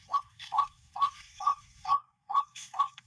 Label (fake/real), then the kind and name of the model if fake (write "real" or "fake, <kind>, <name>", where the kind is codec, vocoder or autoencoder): fake, codec, SNAC